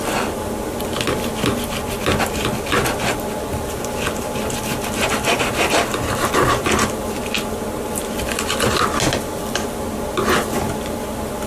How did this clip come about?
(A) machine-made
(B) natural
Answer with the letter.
B